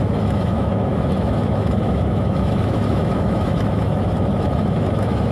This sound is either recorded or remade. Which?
remade